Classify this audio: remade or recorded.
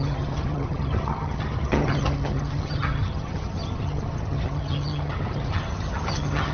remade